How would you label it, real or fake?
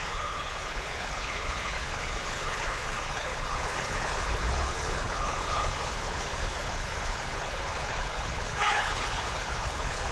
fake